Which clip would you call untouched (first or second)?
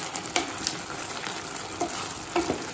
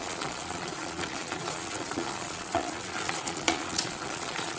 first